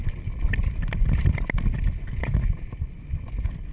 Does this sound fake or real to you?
real